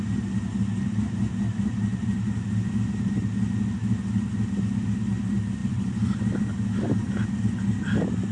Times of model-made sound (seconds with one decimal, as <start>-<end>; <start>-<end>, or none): 1.9-2.6; 5.6-6.4